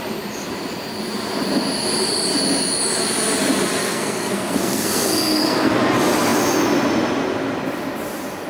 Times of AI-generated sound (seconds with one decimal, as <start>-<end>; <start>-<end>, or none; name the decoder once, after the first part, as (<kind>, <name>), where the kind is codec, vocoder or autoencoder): 3.8-5.8 (codec, SNAC)